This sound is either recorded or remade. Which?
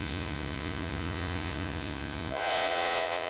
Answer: remade